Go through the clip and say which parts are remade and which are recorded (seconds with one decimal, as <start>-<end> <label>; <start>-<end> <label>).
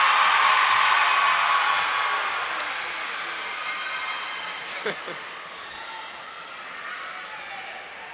0.0-8.1 recorded